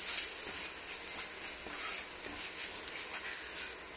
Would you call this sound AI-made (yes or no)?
no